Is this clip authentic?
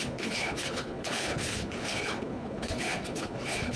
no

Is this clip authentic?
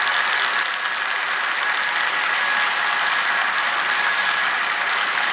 yes